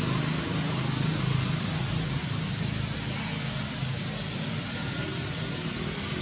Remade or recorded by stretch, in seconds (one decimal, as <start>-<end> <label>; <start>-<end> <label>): 0.0-6.2 recorded